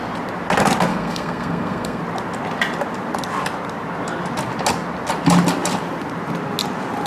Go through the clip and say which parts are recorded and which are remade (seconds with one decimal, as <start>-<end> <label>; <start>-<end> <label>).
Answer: 0.0-0.9 recorded; 0.9-2.0 remade; 2.0-7.1 recorded